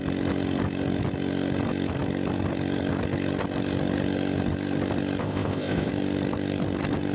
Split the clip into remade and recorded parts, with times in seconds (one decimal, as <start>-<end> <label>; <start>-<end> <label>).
0.0-5.2 recorded; 5.2-5.9 remade; 5.9-7.1 recorded